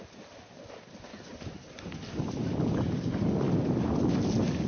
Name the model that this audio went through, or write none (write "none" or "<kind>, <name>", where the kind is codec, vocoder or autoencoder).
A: none